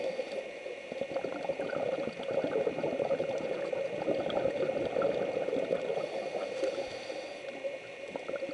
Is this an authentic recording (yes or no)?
yes